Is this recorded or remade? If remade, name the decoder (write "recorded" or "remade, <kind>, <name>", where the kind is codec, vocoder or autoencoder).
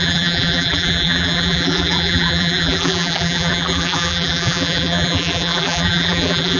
remade, vocoder, BigVGAN v2